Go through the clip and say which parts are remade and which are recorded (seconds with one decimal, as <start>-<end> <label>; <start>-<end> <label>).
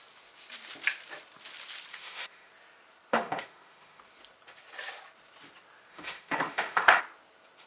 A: 0.0-1.9 recorded; 1.9-2.5 remade; 2.5-3.1 recorded; 3.1-4.0 remade; 4.0-5.9 recorded; 5.9-7.0 remade; 7.0-7.7 recorded